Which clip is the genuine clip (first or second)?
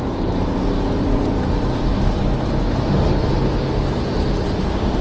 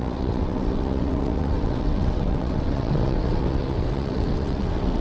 first